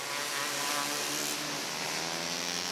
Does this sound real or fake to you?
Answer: real